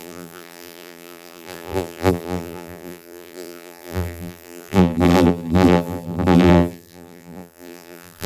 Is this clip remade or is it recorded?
remade